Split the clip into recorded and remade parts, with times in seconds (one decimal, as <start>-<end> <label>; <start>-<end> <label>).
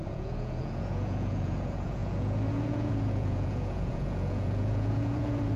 0.0-5.6 remade